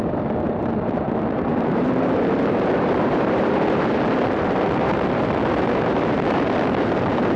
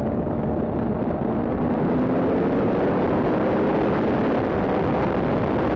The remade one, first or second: first